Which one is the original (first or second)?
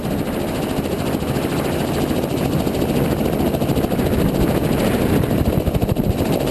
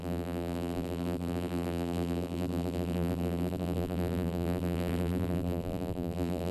first